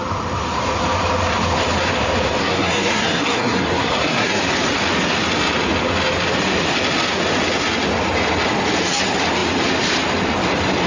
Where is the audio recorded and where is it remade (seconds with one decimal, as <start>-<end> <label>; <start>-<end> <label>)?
0.0-2.4 recorded; 2.4-4.4 remade; 4.4-10.9 recorded